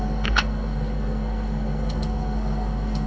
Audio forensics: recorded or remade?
remade